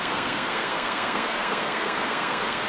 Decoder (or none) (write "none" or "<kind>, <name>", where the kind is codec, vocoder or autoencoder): codec, SNAC